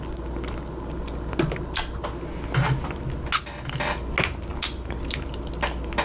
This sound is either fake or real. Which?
real